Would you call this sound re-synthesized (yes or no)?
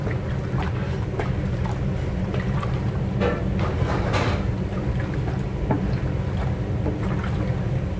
no